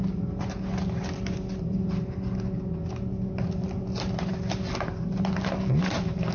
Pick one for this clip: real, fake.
real